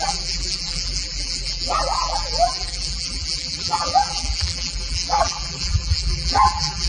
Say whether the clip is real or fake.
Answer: fake